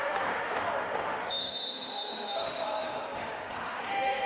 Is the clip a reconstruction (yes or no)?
yes